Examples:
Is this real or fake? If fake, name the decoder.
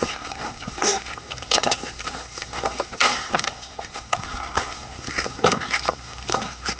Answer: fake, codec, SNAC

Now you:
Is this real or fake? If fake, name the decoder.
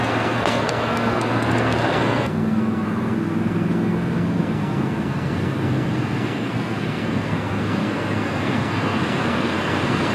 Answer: fake, codec, SNAC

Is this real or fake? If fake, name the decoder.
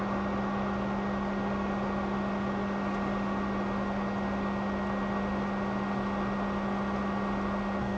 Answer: real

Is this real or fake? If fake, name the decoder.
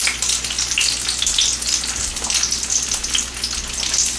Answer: real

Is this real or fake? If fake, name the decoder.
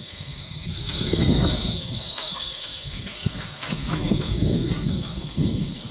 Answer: fake, codec, SNAC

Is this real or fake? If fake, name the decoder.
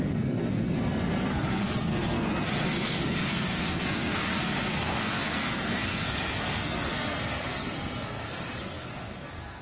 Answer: fake, codec, SNAC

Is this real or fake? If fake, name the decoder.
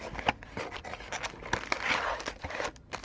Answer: real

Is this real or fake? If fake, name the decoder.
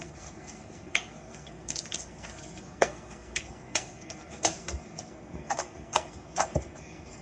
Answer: fake, codec, SNAC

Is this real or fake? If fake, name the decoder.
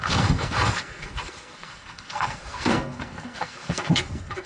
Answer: fake, codec, SNAC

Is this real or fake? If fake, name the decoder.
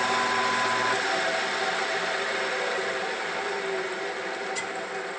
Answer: real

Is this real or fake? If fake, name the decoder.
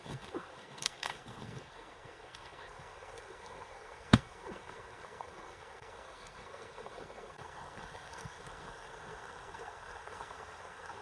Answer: fake, codec, SNAC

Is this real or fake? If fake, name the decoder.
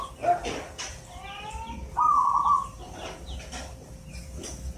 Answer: real